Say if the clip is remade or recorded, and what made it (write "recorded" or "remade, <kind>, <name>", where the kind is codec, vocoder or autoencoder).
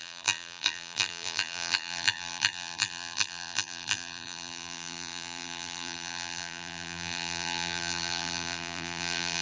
remade, vocoder, BigVGAN v2